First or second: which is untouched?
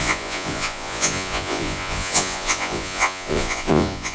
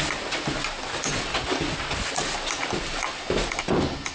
second